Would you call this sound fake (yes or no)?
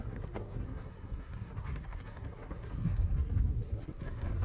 yes